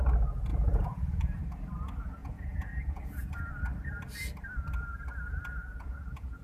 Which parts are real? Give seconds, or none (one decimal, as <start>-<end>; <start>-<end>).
0.0-0.5; 1.4-2.2; 3.5-5.6